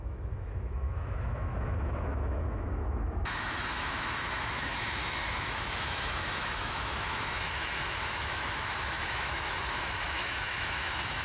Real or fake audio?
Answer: fake